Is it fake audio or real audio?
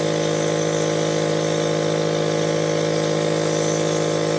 real